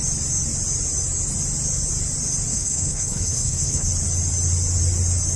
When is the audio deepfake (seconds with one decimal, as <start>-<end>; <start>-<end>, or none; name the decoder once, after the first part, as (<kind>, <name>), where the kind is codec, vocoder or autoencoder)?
2.5-3.9 (codec, HILCodec)